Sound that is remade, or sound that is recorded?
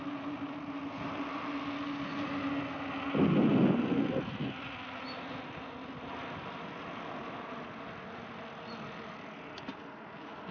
recorded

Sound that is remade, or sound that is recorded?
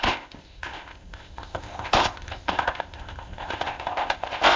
remade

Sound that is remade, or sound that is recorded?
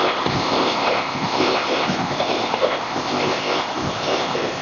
remade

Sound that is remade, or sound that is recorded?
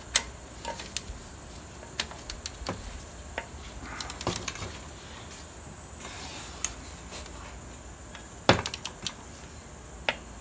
recorded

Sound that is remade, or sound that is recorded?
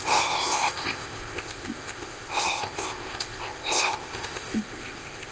remade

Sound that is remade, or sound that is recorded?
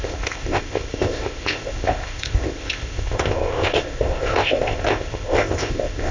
remade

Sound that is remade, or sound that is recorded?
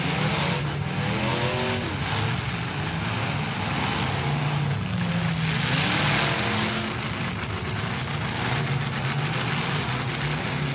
recorded